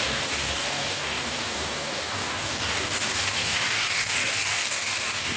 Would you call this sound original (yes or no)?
no